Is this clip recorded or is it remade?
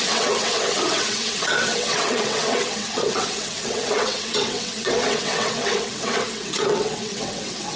remade